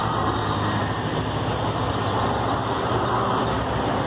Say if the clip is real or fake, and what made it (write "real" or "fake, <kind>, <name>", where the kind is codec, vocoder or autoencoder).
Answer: real